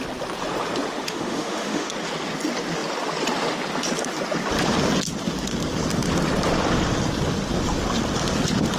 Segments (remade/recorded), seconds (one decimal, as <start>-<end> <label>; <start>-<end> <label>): 0.0-1.1 recorded; 1.1-1.9 remade; 1.9-8.8 recorded